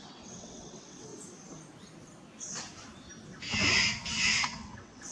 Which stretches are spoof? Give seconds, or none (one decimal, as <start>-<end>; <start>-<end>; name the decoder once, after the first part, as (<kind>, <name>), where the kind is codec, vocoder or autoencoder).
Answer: 0.0-1.1 (vocoder, WaveNeXt); 4.2-5.1